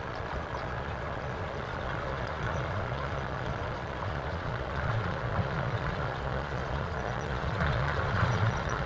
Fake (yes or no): yes